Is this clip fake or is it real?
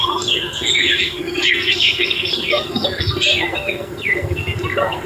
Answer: fake